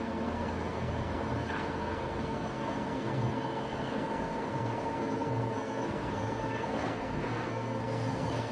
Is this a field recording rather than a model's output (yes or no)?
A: no